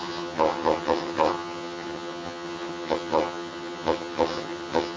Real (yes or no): no